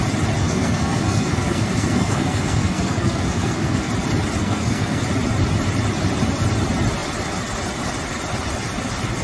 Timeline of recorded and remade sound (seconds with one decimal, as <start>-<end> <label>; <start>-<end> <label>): 0.0-0.4 recorded; 0.4-3.9 remade; 3.9-4.4 recorded; 4.4-5.0 remade; 5.0-9.2 recorded